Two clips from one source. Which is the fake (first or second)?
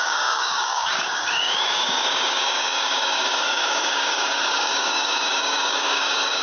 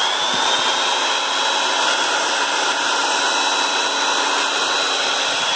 first